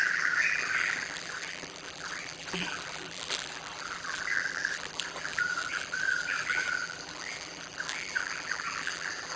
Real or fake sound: fake